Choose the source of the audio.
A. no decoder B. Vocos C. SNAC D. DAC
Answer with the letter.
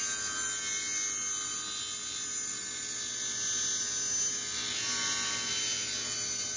A